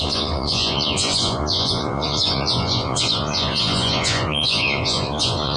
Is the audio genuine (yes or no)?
no